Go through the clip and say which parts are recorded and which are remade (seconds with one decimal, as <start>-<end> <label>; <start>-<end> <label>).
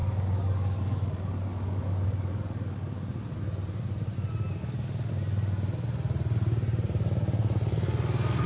0.0-3.1 remade; 3.1-4.6 recorded; 4.6-5.1 remade; 5.1-8.5 recorded